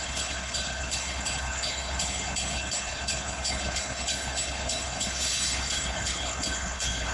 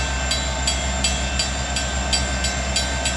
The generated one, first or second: first